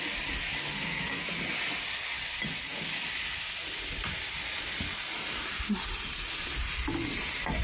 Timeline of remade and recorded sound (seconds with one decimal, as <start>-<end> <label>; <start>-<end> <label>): 0.0-0.7 recorded; 0.7-1.2 remade; 1.2-7.6 recorded